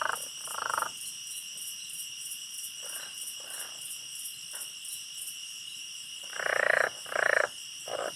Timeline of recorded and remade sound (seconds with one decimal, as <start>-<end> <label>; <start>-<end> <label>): 0.0-4.3 remade; 4.3-4.9 recorded; 4.9-8.2 remade